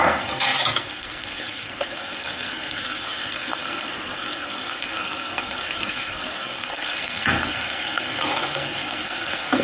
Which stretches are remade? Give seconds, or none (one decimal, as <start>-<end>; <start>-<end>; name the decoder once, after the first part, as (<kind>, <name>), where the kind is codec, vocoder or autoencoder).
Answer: 0.0-9.6 (codec, SNAC)